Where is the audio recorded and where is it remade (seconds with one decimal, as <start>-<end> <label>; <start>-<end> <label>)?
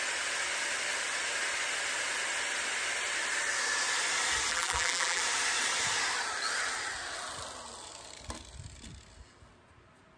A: 0.0-4.5 recorded; 4.5-5.2 remade; 5.2-10.2 recorded